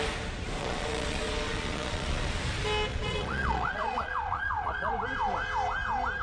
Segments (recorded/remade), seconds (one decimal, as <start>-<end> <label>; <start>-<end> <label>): 0.0-0.6 recorded; 0.6-2.4 remade; 2.4-2.9 recorded; 2.9-4.9 remade; 4.9-6.2 recorded